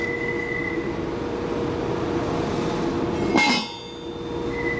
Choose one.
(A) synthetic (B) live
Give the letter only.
B